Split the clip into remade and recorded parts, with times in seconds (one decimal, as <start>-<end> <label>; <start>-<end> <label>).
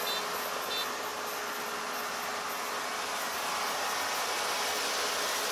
0.0-5.5 recorded